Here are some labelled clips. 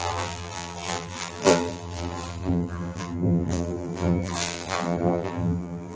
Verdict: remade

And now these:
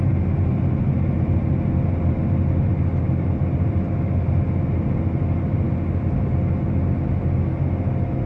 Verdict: recorded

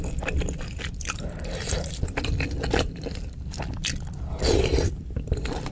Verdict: remade